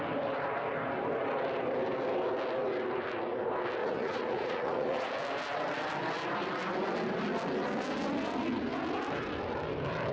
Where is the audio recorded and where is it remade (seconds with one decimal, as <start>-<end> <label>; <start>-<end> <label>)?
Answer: 0.0-3.8 recorded; 3.8-5.1 remade; 5.1-10.1 recorded